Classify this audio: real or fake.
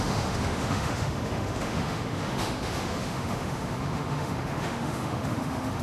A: fake